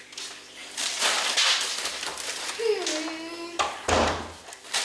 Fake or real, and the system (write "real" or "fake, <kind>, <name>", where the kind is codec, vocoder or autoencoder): real